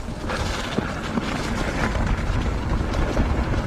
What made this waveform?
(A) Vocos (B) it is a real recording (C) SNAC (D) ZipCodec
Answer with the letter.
B